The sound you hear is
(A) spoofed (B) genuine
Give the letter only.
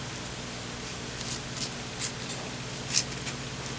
B